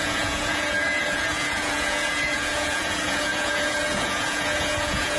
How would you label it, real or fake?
fake